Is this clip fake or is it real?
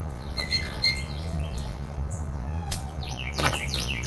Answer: fake